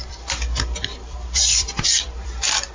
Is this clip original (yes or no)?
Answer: no